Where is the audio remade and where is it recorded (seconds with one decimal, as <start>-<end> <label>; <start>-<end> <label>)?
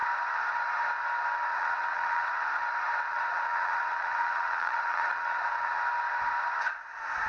0.0-1.5 recorded; 1.5-2.3 remade; 2.3-3.1 recorded; 3.1-5.7 remade; 5.7-7.3 recorded